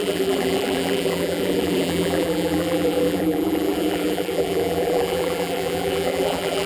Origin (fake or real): fake